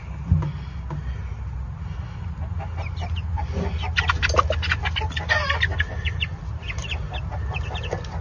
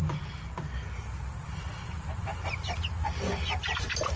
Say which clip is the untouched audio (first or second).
first